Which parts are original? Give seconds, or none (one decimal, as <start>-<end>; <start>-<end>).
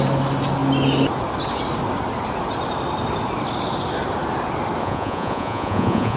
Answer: 0.0-4.8